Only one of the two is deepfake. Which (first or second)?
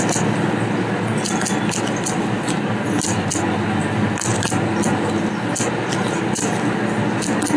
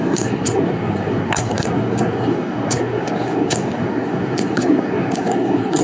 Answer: second